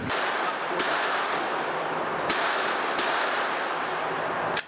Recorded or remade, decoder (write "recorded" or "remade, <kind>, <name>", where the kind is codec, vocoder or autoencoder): remade, vocoder, BigVGAN v2